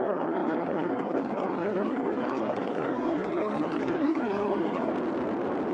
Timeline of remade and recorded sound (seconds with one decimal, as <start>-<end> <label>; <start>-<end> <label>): 0.0-4.9 remade; 4.9-5.7 recorded